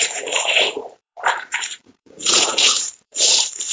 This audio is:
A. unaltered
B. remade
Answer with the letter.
B